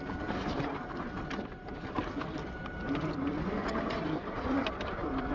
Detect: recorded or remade recorded